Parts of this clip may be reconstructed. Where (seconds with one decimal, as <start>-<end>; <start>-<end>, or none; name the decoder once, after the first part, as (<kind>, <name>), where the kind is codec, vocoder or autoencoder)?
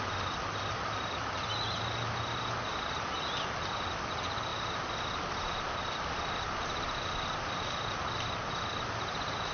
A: none